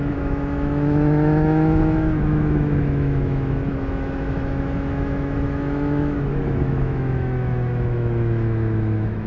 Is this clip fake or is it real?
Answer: fake